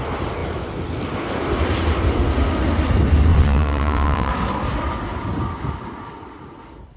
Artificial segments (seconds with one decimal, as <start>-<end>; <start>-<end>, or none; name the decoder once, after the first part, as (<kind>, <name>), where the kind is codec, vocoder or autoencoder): 3.3-4.3 (vocoder, WaveNeXt)

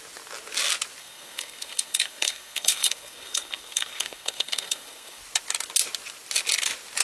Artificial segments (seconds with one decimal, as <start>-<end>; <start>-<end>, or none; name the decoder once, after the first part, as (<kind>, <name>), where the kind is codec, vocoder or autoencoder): 1.0-5.2 (codec, SNAC)

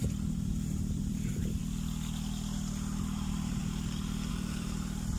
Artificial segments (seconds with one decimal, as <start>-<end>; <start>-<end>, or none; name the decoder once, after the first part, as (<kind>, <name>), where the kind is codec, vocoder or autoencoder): 0.0-0.5 (vocoder, BigVGAN v2); 1.0-1.6; 3.0-3.6; 4.3-5.2

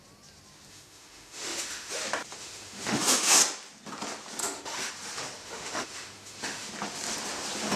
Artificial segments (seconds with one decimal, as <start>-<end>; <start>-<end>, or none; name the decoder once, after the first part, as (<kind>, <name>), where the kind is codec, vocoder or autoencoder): 0.7-1.9 (autoencoder, DAC-VAE); 2.4-3.4; 4.4-4.9; 5.4-6.7

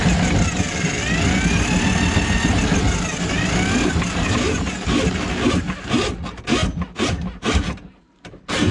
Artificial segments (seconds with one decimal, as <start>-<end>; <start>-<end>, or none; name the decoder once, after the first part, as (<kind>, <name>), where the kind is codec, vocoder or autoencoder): none